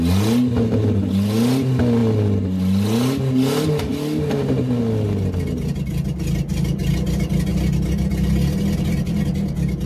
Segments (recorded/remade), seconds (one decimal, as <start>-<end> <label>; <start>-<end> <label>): 0.0-9.9 recorded